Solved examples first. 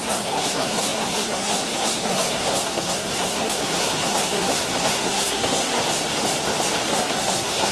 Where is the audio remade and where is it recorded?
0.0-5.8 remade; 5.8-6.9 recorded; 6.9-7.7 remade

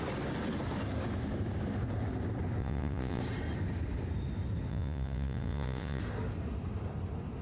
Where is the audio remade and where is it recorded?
0.0-2.6 recorded; 2.6-3.2 remade; 3.2-4.7 recorded; 4.7-6.0 remade; 6.0-7.4 recorded

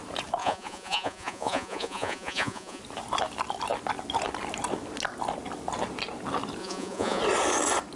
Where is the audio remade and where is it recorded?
0.0-0.4 recorded; 0.4-2.8 remade; 2.8-6.6 recorded; 6.6-7.2 remade; 7.2-8.0 recorded

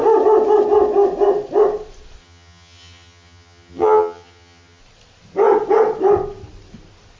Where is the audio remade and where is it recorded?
0.0-2.2 recorded; 2.2-4.8 remade; 4.8-7.2 recorded